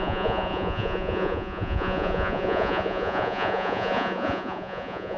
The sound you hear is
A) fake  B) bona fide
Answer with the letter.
A